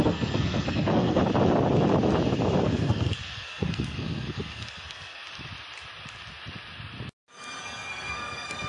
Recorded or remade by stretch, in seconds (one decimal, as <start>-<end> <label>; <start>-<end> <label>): 0.0-1.2 remade; 1.2-2.6 recorded; 2.6-5.2 remade; 5.2-7.6 recorded; 7.6-8.7 remade

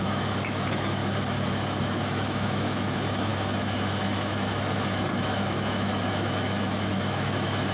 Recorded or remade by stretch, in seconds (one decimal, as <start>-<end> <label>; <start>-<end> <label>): 0.0-1.0 remade; 1.0-1.8 recorded; 1.8-3.3 remade; 3.3-3.9 recorded; 3.9-7.7 remade

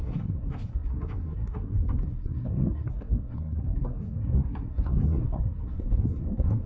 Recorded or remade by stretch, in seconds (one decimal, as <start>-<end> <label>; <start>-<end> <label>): 0.0-6.7 remade

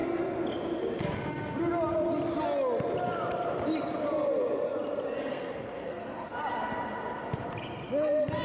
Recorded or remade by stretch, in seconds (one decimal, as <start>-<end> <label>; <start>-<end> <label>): 0.0-5.3 recorded; 5.3-6.3 remade; 6.3-8.4 recorded

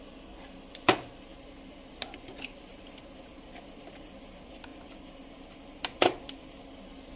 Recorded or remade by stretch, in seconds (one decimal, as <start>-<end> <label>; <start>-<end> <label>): 0.0-1.3 recorded; 1.3-4.1 remade; 4.1-4.7 recorded; 4.7-6.6 remade; 6.6-7.2 recorded

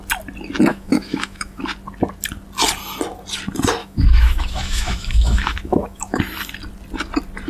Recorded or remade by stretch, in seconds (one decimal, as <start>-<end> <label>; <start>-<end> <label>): 0.0-0.7 recorded; 0.7-1.6 remade; 1.6-3.8 recorded; 3.8-6.2 remade; 6.2-7.5 recorded

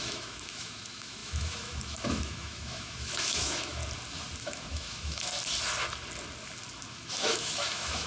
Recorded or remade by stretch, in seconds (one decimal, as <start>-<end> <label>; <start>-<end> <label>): 0.0-3.8 remade; 3.8-4.4 recorded; 4.4-5.3 remade; 5.3-6.9 recorded; 6.9-8.1 remade